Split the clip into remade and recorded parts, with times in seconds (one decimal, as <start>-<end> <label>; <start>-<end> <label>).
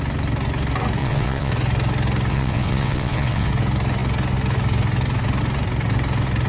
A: 0.0-1.0 recorded; 1.0-1.5 remade; 1.5-2.3 recorded; 2.3-3.5 remade; 3.5-6.5 recorded